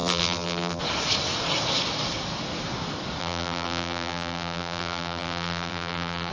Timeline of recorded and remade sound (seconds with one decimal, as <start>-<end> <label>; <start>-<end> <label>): 0.0-0.8 remade; 0.8-3.2 recorded; 3.2-6.3 remade